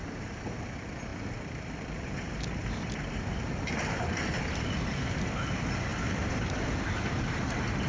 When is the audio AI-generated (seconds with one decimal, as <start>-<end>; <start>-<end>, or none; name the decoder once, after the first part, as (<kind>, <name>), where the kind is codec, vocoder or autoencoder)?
none